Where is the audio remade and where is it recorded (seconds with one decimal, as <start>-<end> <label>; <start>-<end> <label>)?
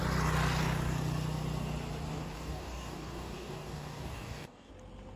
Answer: 0.0-2.1 recorded; 2.1-4.7 remade; 4.7-5.2 recorded